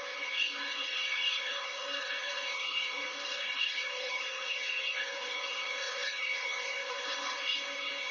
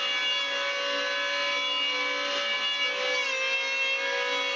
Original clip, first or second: second